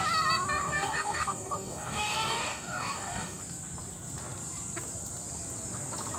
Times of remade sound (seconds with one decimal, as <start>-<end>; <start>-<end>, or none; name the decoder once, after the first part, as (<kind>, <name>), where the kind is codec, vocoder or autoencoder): 0.6-3.4 (codec, DAC)